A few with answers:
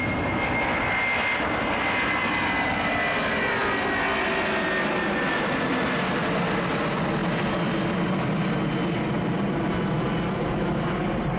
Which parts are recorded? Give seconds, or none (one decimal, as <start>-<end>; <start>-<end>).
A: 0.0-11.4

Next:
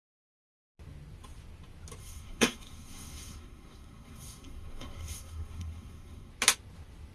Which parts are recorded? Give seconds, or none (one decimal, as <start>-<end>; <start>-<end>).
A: 0.0-2.0; 6.3-7.1

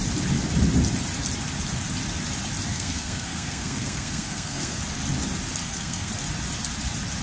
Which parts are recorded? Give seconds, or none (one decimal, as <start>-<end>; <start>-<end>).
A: 0.0-2.7; 4.8-5.6; 6.1-7.2

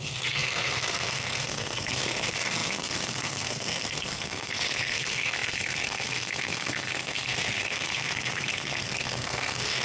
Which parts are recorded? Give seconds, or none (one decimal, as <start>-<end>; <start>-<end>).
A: none

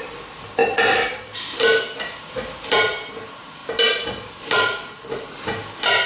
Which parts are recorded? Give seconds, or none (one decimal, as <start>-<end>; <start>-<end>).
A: 0.0-6.1